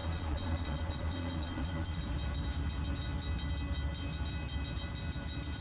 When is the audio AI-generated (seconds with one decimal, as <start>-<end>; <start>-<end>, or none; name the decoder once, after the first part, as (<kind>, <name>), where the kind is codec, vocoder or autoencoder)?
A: 0.0-2.0 (vocoder, Vocos)